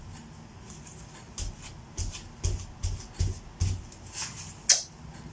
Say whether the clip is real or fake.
real